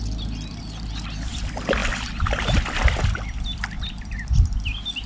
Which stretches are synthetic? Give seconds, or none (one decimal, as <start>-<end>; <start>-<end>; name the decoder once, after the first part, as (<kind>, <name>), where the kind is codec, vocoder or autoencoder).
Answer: 0.0-5.1 (vocoder, BigVGAN v2)

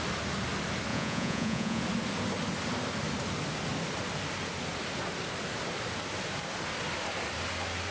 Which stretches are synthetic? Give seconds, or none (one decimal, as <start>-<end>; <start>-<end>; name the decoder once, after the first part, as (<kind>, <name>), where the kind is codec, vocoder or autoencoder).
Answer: 0.9-1.8 (vocoder, Vocos)

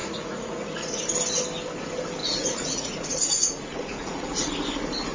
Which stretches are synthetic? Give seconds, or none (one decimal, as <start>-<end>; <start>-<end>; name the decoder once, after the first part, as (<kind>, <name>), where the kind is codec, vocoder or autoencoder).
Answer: 0.0-1.0 (vocoder, Vocos); 2.2-4.5

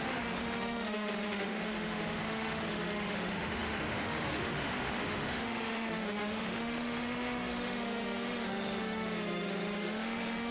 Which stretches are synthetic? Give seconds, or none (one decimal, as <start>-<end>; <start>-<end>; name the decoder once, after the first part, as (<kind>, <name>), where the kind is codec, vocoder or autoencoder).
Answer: 0.0-10.5 (autoencoder, DAC-VAE)

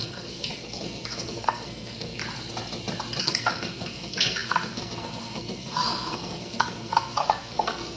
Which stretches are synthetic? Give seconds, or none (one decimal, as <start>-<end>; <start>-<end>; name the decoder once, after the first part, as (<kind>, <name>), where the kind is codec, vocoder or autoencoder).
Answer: 0.0-2.2 (codec, SNAC); 3.2-8.0

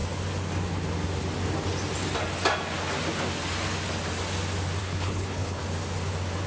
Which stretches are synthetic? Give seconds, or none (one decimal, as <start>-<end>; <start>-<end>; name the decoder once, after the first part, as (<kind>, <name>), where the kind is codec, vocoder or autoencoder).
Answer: 4.8-5.6 (codec, HILCodec)

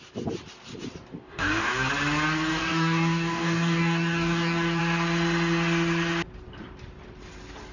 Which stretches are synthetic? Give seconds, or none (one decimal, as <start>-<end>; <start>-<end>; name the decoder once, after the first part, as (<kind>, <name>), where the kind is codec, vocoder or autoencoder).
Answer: 1.2-1.9 (codec, DAC); 2.5-4.8

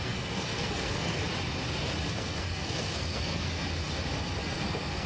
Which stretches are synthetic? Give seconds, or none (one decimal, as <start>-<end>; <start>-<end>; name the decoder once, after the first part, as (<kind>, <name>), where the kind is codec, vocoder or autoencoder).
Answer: 0.0-1.2 (codec, SNAC); 2.1-3.6; 4.4-5.1